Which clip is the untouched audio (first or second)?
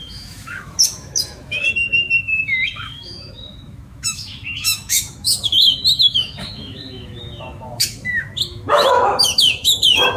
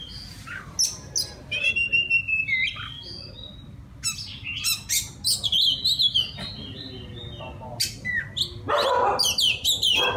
second